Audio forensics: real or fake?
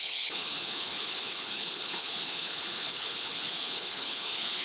fake